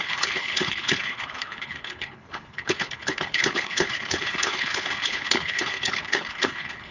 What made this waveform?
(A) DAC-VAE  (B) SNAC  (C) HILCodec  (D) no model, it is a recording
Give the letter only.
C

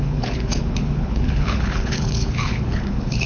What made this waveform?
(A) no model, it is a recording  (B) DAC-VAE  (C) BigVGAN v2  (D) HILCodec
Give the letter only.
D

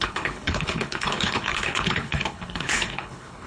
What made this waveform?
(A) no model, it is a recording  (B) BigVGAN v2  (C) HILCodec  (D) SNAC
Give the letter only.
C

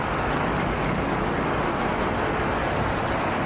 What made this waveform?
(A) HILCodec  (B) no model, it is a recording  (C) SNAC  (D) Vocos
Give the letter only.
B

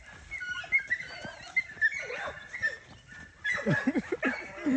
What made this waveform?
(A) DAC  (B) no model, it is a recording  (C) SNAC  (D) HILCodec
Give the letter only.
B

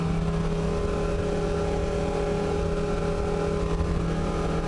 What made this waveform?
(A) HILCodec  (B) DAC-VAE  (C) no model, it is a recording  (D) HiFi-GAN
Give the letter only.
C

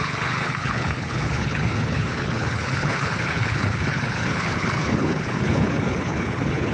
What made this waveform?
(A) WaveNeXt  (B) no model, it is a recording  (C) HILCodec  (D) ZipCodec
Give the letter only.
C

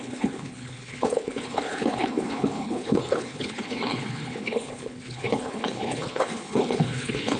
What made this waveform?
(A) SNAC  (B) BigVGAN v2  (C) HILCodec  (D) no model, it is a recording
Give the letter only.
C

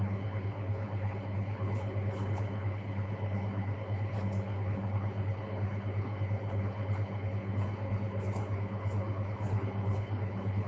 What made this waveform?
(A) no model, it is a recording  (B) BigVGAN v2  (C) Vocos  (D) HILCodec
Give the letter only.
D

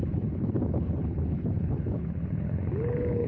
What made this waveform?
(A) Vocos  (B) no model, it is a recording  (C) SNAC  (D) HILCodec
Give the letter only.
D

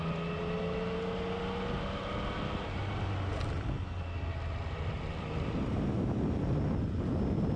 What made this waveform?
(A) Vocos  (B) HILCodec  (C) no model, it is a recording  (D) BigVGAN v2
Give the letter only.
C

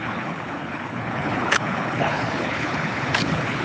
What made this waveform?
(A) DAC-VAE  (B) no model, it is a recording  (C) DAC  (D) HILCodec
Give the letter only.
D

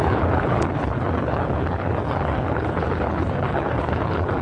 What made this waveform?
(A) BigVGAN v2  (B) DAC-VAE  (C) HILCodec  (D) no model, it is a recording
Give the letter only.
C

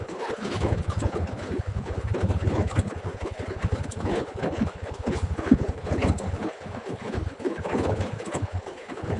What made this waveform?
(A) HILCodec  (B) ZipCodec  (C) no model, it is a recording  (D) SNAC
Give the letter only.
A